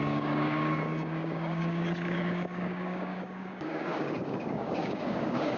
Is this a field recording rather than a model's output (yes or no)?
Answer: no